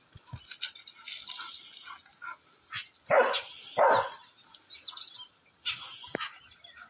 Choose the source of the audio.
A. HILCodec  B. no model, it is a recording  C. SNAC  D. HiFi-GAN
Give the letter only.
B